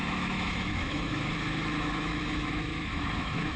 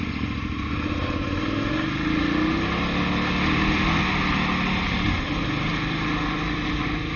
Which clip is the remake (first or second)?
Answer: first